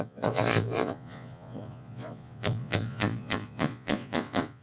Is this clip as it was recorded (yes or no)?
no